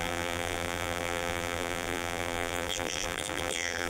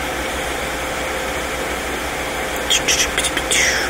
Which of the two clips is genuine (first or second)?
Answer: second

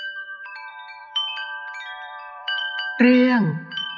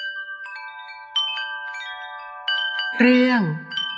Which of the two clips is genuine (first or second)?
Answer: second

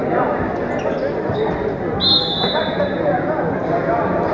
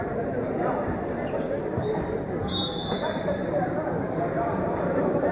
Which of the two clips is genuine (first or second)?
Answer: first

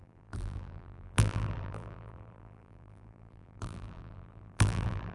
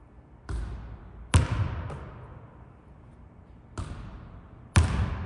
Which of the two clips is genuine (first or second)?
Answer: second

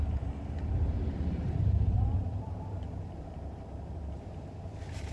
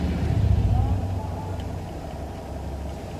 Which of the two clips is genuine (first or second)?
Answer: second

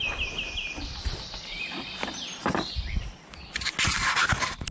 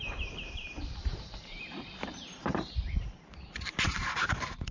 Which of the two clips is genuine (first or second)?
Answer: first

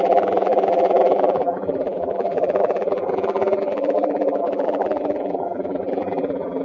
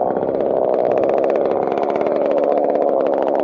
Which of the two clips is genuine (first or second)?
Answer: second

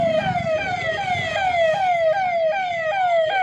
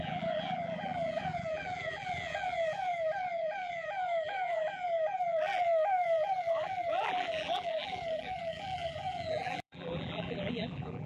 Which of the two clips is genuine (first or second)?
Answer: first